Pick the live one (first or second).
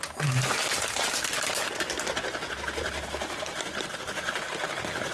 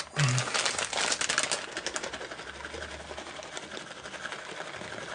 second